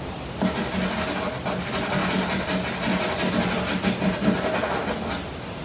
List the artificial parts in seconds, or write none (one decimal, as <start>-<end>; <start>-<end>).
none